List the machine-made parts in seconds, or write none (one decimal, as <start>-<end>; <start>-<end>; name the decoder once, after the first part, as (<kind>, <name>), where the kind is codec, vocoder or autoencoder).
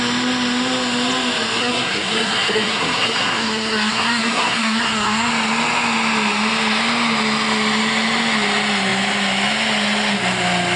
1.6-5.3 (codec, SNAC)